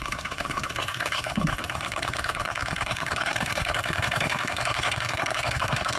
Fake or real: fake